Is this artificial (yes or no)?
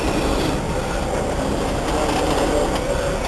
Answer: no